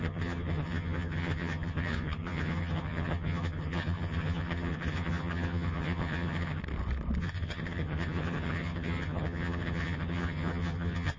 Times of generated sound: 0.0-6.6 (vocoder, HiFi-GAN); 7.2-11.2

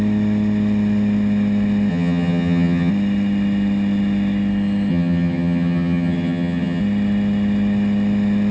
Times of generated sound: 1.9-2.9 (vocoder, HiFi-GAN); 4.9-6.8

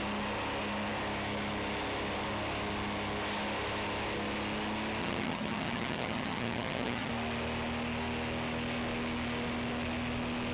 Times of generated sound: 5.0-7.1 (vocoder, HiFi-GAN)

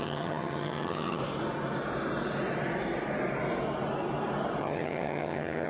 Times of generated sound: 0.0-1.2 (vocoder, HiFi-GAN); 4.6-5.7